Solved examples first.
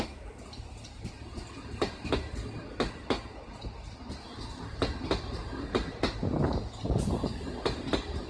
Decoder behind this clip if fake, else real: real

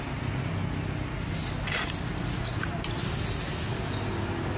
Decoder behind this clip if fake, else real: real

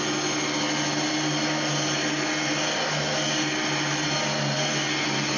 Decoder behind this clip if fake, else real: real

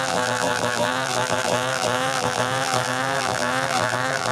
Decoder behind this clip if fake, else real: fake, vocoder, BigVGAN v2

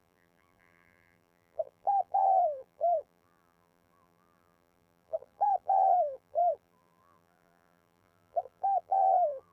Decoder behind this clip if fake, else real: fake, vocoder, BigVGAN v2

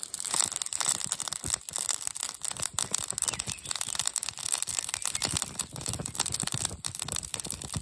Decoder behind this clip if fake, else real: fake, vocoder, BigVGAN v2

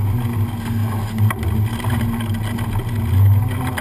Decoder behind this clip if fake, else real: real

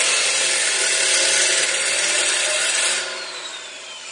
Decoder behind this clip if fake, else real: real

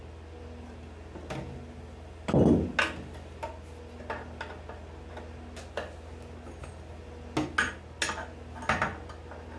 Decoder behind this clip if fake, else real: real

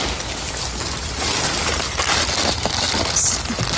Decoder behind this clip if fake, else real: real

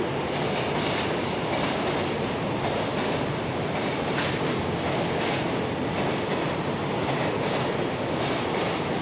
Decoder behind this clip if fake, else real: real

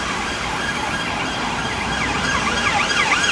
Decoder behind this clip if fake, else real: fake, vocoder, BigVGAN v2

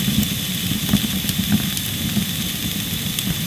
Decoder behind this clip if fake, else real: real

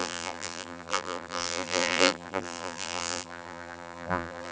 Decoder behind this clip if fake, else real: fake, vocoder, BigVGAN v2